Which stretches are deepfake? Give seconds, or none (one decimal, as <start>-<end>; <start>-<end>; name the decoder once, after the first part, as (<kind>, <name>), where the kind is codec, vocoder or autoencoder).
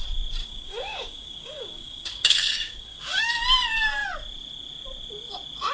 0.4-3.3 (codec, DAC)